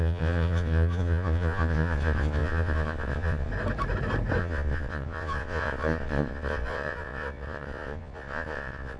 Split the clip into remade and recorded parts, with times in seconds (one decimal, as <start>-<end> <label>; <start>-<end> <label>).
0.0-3.5 remade; 3.5-4.4 recorded; 4.4-9.0 remade